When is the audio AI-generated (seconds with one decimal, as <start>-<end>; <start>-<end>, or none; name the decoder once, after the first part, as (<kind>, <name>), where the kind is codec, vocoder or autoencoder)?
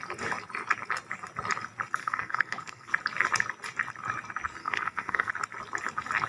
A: 2.0-2.9 (codec, SNAC); 4.6-5.3